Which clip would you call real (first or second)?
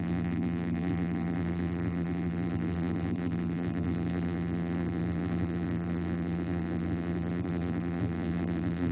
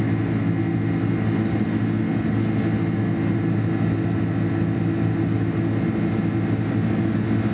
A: second